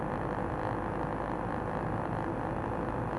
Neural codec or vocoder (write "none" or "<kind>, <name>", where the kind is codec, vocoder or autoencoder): none